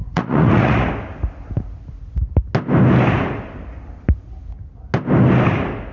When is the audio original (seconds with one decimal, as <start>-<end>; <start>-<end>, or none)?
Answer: 0.9-5.9